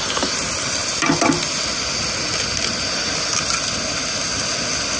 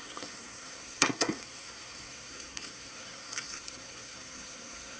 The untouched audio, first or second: first